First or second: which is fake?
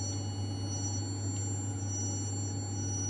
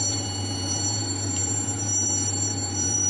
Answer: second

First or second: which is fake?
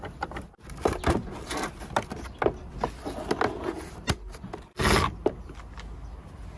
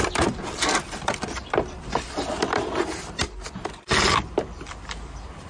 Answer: second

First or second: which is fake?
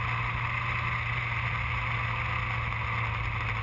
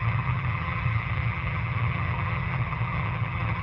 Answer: second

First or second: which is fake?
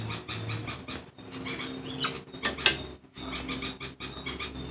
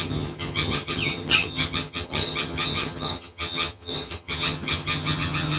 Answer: second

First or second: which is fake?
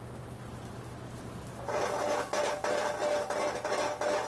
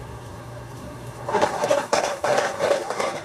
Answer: second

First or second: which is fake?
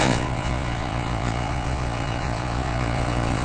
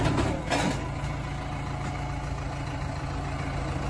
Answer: first